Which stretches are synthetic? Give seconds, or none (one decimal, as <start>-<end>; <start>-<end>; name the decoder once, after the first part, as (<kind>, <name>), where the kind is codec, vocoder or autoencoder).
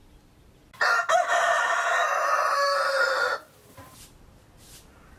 none